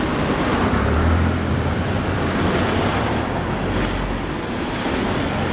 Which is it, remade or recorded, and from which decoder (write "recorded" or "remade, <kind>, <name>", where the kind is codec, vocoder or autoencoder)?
recorded